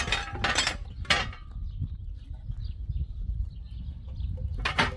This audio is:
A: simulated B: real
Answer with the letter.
B